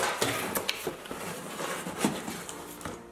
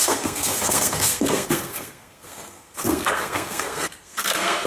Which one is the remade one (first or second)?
second